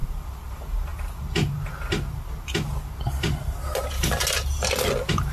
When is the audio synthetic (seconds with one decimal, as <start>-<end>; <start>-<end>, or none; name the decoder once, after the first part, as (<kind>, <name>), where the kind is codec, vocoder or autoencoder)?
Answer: none